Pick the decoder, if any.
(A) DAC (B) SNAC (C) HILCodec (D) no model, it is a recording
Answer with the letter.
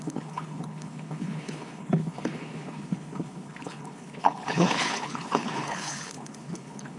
C